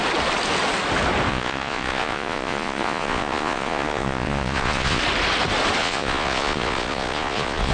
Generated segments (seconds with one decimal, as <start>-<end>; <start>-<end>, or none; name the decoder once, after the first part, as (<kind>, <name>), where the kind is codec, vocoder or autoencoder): 1.3-5.0 (vocoder, Vocos); 5.8-7.7